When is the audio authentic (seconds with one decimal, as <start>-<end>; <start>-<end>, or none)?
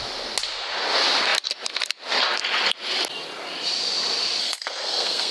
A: 0.0-4.4